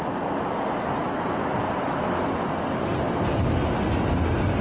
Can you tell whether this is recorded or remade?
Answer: recorded